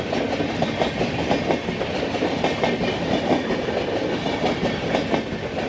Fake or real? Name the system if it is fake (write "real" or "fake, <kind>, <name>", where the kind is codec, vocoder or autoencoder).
real